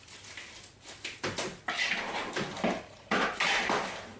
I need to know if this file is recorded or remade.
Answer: recorded